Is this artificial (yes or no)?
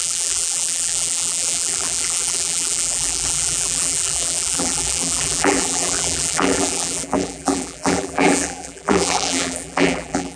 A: yes